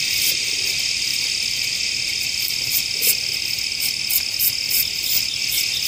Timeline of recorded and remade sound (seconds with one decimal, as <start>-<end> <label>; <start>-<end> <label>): 0.0-5.9 recorded